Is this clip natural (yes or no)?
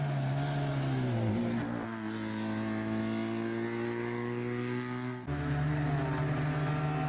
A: yes